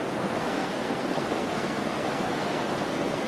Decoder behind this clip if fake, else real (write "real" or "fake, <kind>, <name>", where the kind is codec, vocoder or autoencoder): fake, codec, SNAC